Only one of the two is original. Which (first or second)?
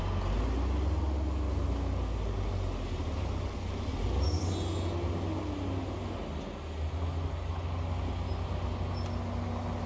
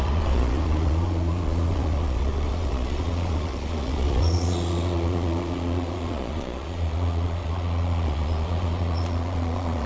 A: first